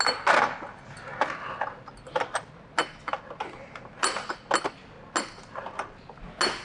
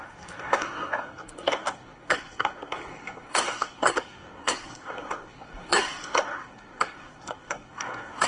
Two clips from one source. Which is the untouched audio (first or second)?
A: first